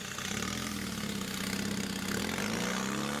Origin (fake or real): real